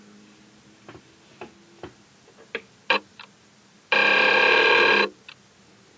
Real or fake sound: real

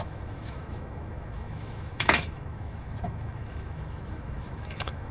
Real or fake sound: fake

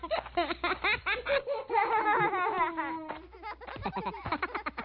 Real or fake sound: real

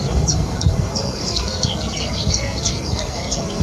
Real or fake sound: fake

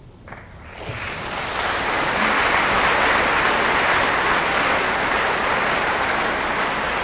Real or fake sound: real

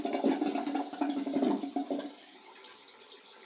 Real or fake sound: real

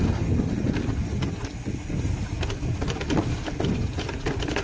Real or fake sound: real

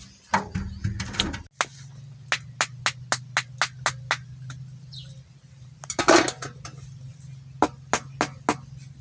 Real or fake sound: real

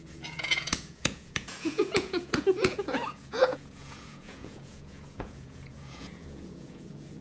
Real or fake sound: fake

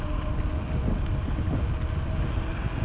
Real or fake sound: real